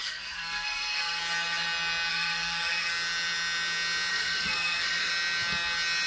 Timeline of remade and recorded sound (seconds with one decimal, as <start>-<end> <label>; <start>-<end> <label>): 0.0-1.2 remade; 1.2-2.1 recorded; 2.1-2.9 remade; 2.9-4.1 recorded; 4.1-5.1 remade; 5.1-6.1 recorded